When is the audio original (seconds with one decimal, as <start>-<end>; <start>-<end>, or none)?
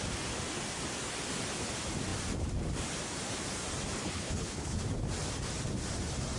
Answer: 0.0-4.0; 4.8-6.4